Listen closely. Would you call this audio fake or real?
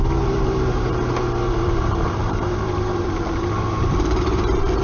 fake